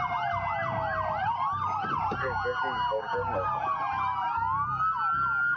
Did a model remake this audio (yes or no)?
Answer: no